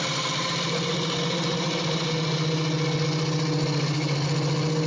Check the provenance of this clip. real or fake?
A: real